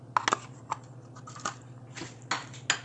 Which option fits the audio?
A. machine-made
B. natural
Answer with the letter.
B